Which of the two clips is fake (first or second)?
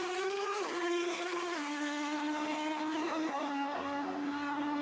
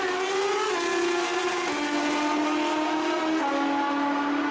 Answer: first